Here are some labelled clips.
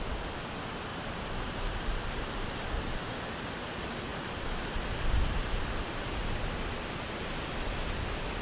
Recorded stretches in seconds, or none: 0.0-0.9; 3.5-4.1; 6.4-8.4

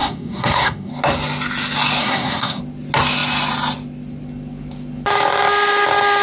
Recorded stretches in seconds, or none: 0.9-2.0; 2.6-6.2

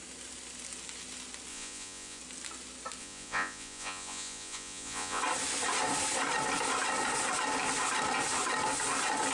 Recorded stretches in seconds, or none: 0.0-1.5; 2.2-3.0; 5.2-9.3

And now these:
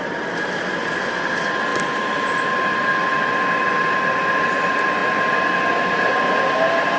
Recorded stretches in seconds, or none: 0.0-7.0

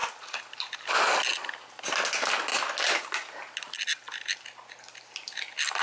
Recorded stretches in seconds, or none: 0.7-5.8

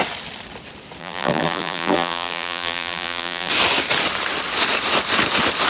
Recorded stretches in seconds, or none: 0.0-1.0; 3.5-5.7

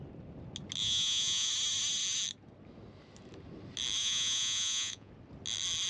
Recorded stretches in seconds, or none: 0.0-0.8; 1.5-4.0; 5.1-5.9

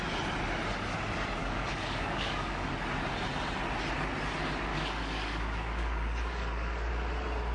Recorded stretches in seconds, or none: 0.0-1.4; 2.7-4.7; 6.9-7.5